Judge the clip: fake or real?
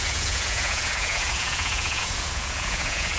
fake